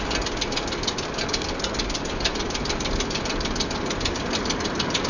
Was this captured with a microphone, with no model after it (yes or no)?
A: yes